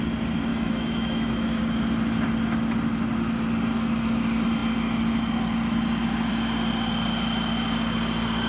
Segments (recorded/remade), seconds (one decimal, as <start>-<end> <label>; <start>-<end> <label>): 0.0-0.5 recorded; 0.5-1.6 remade; 1.6-8.5 recorded